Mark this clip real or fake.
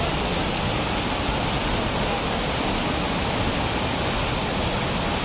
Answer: real